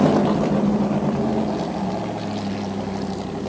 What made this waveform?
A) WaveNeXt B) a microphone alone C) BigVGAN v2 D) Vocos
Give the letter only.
B